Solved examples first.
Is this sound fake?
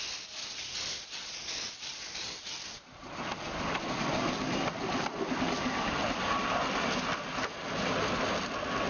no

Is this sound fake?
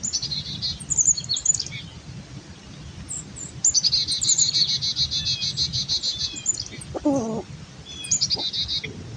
no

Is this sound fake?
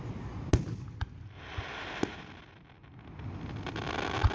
no